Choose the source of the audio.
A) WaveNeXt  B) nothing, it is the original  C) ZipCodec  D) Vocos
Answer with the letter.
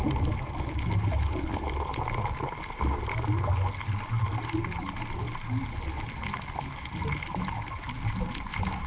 B